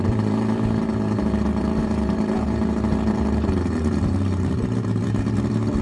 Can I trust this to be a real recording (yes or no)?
no